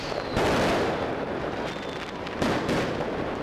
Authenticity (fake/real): real